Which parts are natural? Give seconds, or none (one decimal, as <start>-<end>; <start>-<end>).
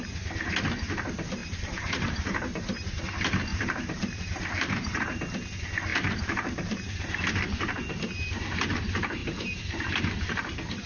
0.0-1.4; 3.0-3.5; 5.0-5.9; 7.2-9.2; 9.8-10.9